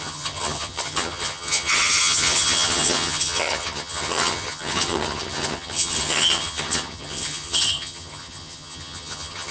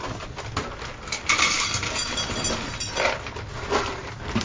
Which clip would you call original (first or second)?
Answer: second